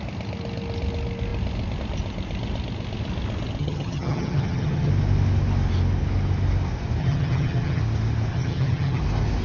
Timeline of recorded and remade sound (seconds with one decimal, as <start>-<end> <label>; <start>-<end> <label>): 0.0-3.6 recorded; 3.6-4.9 remade; 4.9-7.0 recorded; 7.0-7.8 remade; 7.8-8.3 recorded; 8.3-9.0 remade; 9.0-9.4 recorded

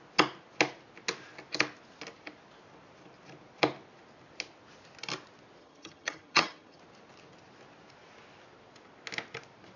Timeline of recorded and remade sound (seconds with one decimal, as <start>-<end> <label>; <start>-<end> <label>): 0.0-5.6 recorded; 5.6-6.8 remade; 6.8-9.8 recorded

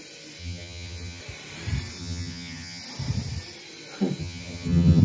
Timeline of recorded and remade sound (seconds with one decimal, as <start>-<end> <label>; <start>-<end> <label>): 0.0-0.4 recorded; 0.4-1.2 remade; 1.2-2.0 recorded; 2.0-2.8 remade; 2.8-4.2 recorded; 4.2-5.0 remade

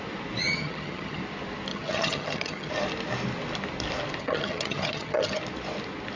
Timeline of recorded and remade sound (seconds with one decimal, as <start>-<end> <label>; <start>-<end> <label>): 0.0-0.4 recorded; 0.4-1.2 remade; 1.2-1.7 recorded; 1.7-2.7 remade; 2.7-4.2 recorded; 4.2-5.4 remade; 5.4-6.2 recorded

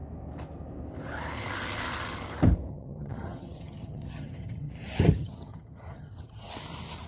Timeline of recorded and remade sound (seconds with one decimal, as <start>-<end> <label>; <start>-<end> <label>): 0.0-2.7 recorded; 2.7-4.7 remade; 4.7-5.2 recorded; 5.2-6.5 remade; 6.5-7.1 recorded